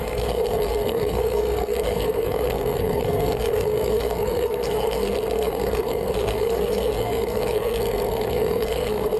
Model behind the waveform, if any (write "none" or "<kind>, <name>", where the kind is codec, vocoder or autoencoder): codec, SNAC